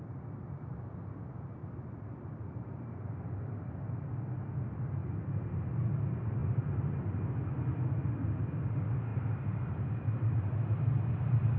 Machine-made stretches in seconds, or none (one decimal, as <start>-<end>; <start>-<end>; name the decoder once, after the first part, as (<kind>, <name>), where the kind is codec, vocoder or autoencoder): 1.6-3.7 (vocoder, BigVGAN v2); 9.1-10.8